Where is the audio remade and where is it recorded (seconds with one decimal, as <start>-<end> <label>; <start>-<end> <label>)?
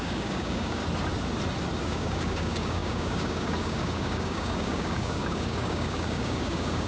0.0-0.8 remade; 0.8-1.8 recorded; 1.8-6.9 remade